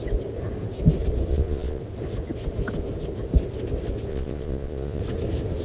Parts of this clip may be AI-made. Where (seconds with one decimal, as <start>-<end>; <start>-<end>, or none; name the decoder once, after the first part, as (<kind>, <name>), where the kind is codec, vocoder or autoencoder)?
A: 1.3-1.8 (vocoder, Vocos); 4.1-5.0